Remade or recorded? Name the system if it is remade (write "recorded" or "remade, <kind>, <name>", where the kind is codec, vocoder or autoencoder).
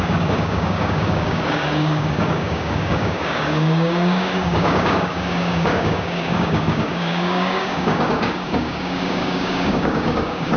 remade, codec, DAC